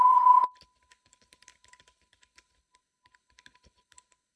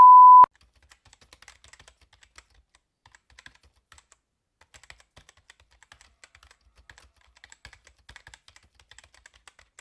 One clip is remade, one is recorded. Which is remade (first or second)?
first